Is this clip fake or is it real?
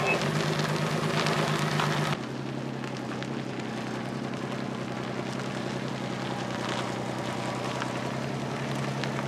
real